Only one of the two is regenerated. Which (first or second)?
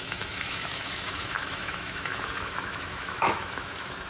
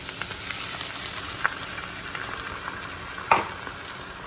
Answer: first